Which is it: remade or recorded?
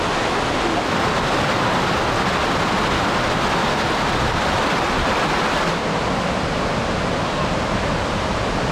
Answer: recorded